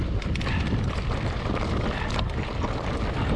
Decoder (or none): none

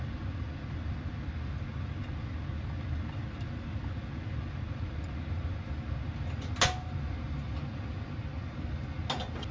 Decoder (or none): none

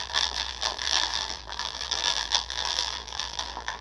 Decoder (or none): vocoder, BigVGAN v2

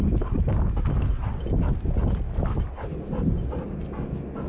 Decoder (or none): none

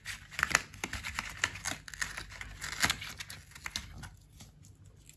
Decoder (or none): none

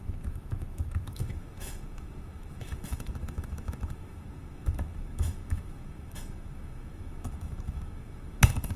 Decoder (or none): autoencoder, DAC-VAE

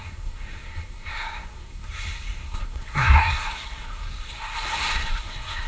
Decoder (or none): codec, SNAC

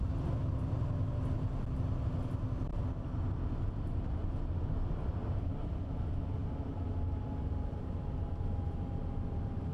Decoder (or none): none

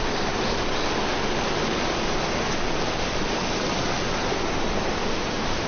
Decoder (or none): none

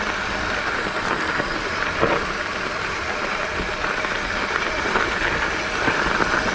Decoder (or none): none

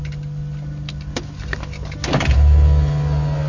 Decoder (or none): none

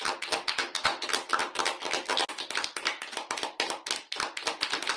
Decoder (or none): none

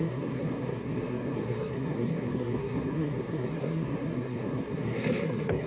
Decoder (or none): codec, SNAC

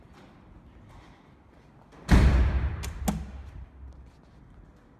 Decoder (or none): none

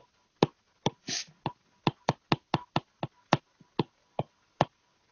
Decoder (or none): none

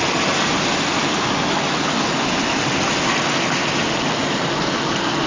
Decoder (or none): none